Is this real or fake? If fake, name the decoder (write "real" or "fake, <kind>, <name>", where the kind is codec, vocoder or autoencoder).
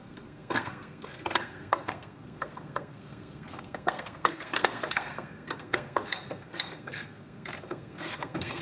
fake, codec, SNAC